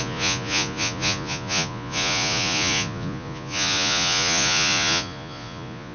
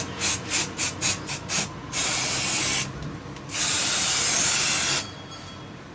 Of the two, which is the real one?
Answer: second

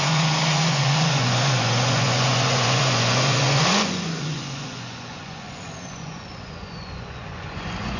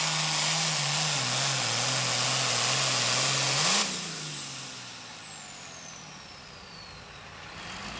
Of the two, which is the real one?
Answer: second